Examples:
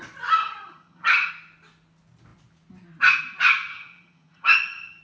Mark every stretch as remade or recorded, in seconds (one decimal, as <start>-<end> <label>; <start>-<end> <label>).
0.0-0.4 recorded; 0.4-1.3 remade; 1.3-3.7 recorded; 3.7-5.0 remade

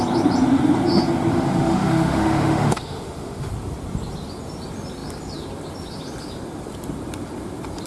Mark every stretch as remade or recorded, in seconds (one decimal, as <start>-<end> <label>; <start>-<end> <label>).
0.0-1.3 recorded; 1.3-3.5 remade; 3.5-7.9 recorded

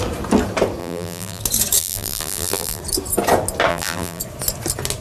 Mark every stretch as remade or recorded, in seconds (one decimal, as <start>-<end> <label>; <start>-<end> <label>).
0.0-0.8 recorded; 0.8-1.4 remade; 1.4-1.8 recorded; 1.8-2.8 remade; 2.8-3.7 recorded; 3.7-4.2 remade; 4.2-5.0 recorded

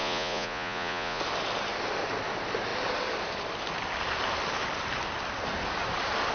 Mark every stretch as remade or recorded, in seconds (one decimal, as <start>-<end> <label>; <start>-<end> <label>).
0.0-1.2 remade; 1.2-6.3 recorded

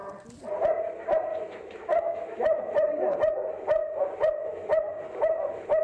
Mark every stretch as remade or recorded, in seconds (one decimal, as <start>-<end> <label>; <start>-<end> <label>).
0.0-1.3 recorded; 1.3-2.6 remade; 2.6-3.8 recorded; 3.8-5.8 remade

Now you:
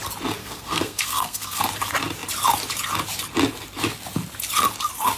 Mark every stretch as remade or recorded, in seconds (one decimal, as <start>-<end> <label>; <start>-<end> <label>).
0.0-0.4 recorded; 0.4-1.6 remade; 1.6-5.2 recorded